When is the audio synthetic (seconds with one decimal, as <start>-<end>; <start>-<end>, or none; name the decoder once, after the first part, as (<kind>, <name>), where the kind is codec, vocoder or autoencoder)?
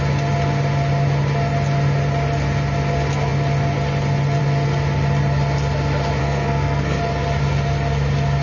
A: 6.2-7.0 (codec, SNAC)